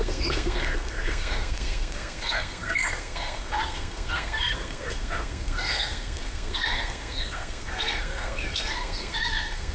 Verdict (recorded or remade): remade